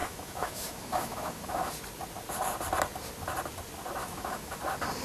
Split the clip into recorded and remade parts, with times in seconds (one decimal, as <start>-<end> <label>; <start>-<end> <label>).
0.0-1.7 remade; 1.7-4.0 recorded; 4.0-4.6 remade; 4.6-5.0 recorded